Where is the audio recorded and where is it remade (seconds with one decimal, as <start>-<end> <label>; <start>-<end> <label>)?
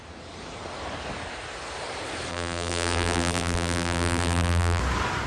0.0-2.3 recorded; 2.3-4.8 remade; 4.8-5.3 recorded